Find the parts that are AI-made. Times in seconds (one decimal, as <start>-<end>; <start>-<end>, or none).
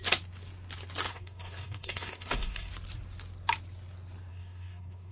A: 1.1-2.7; 4.3-5.1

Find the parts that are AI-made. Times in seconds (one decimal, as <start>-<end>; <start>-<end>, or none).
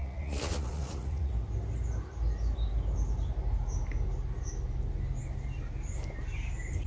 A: 0.0-1.3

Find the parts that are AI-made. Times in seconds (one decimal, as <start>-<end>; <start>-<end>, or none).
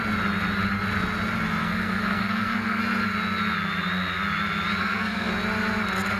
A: 1.6-2.8; 4.8-5.3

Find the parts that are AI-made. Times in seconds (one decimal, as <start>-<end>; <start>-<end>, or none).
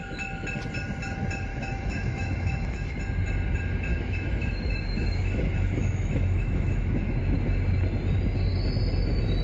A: 1.5-3.0; 3.9-7.2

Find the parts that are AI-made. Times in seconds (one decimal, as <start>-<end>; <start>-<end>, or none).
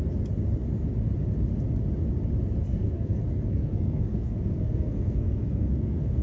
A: 2.7-6.2